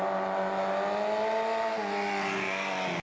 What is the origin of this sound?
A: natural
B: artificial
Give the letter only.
A